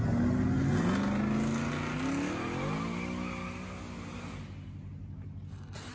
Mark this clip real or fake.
real